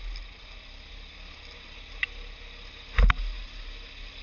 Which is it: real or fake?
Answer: real